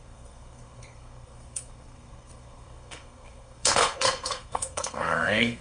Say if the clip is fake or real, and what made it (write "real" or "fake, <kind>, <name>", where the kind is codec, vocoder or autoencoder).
fake, codec, SNAC